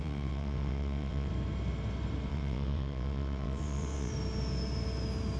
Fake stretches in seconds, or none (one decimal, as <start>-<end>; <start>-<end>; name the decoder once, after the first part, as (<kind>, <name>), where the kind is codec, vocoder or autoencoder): 0.0-1.3 (vocoder, WaveNeXt); 2.3-4.1